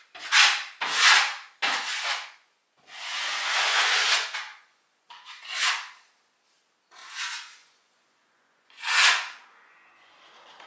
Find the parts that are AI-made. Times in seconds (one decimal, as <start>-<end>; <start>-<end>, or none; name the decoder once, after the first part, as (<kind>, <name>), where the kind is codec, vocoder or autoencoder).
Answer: 1.9-5.7 (vocoder, Vocos); 7.0-10.1